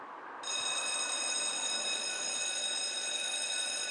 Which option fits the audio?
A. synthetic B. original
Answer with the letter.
B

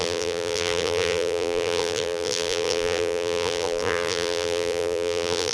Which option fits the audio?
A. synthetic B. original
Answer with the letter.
A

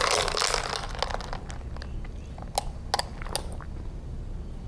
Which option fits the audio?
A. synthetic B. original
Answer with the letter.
B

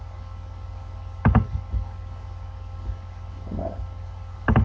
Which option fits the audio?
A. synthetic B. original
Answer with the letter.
A